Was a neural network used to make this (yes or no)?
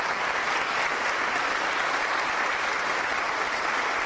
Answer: no